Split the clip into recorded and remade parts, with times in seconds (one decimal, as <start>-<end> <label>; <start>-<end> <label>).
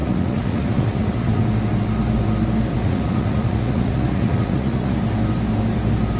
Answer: 0.0-1.4 remade; 1.4-2.7 recorded; 2.7-5.0 remade; 5.0-6.2 recorded